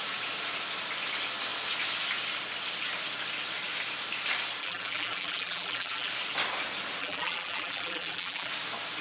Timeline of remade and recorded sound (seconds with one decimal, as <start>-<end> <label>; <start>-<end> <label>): 0.0-4.6 recorded; 4.6-6.1 remade; 6.1-7.0 recorded; 7.0-8.5 remade; 8.5-9.0 recorded